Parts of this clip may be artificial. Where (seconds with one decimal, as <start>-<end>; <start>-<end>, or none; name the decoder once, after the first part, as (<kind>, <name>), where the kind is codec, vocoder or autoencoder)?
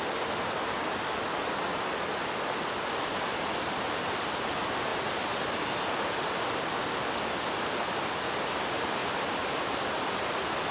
none